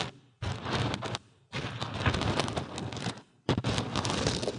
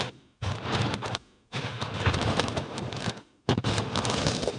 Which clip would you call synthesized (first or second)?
second